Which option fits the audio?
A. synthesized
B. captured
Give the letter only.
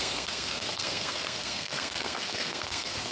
A